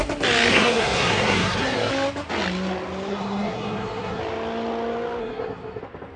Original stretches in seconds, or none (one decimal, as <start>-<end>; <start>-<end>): 0.0-0.5; 1.9-3.1; 4.2-5.2; 5.8-6.2